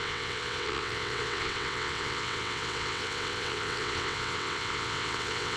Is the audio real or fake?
fake